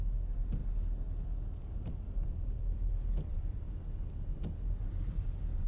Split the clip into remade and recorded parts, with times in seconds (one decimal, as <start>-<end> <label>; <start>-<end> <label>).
0.0-5.7 recorded